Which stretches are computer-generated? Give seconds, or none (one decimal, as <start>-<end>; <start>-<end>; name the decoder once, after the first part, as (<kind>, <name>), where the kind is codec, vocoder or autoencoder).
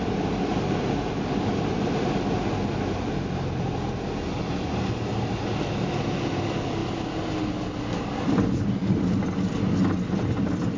none